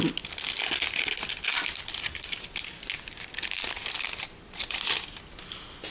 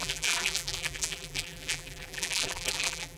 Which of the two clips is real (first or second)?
first